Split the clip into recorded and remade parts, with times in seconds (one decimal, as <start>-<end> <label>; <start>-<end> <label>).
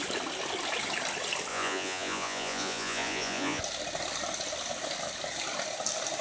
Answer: 0.0-1.5 recorded; 1.5-3.6 remade; 3.6-6.2 recorded